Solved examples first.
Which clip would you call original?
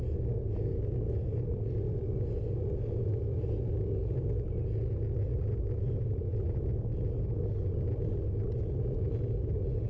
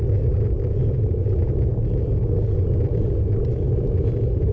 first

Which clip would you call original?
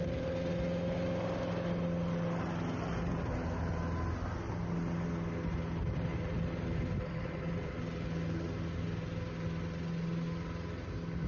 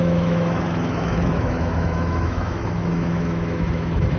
first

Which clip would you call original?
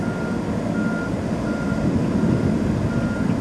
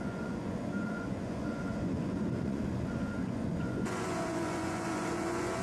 first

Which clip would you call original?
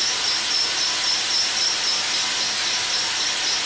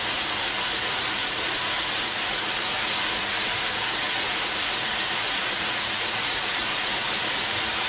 first